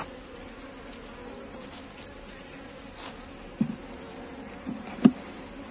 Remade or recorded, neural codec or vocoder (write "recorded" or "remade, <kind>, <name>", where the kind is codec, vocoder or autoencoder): recorded